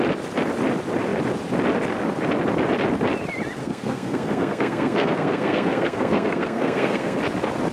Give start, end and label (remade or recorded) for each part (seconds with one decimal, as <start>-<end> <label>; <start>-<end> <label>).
0.0-3.6 recorded; 3.6-7.2 remade; 7.2-7.7 recorded